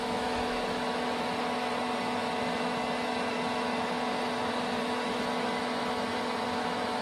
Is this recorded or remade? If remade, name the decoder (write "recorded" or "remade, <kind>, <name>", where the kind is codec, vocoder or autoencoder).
remade, autoencoder, DAC-VAE